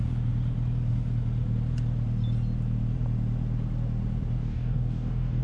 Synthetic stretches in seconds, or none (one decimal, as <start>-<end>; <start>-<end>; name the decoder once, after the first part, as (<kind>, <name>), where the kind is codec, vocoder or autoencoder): 4.4-5.4 (codec, DAC)